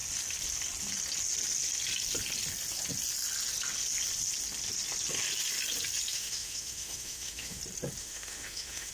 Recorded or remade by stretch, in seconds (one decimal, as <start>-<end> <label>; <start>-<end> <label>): 0.0-6.1 recorded; 6.1-7.6 remade; 7.6-8.0 recorded; 8.0-8.9 remade

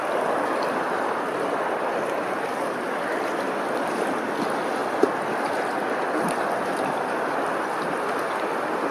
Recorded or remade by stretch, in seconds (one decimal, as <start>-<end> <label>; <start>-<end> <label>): 0.0-8.9 recorded

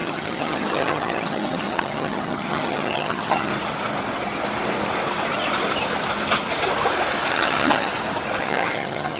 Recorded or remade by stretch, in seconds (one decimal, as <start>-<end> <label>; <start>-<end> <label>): 0.0-3.5 remade; 3.5-7.3 recorded; 7.3-7.9 remade; 7.9-8.4 recorded; 8.4-9.2 remade

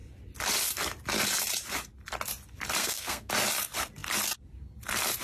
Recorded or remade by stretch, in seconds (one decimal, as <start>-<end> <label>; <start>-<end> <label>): 0.0-2.8 recorded; 2.8-3.3 remade; 3.3-5.2 recorded

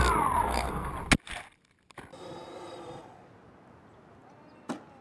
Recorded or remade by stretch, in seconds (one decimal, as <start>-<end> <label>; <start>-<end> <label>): 0.0-0.4 recorded; 0.4-0.9 remade; 0.9-5.0 recorded

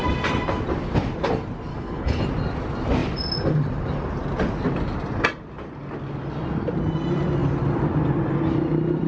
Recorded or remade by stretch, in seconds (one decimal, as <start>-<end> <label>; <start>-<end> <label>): 0.0-1.7 recorded; 1.7-2.2 remade; 2.2-9.1 recorded

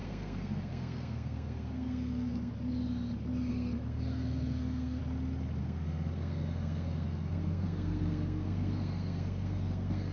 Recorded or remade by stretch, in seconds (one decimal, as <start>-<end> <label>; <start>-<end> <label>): 0.0-2.5 remade; 2.5-3.5 recorded; 3.5-5.0 remade; 5.0-5.6 recorded; 5.6-10.1 remade